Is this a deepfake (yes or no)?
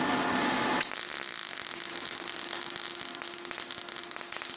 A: no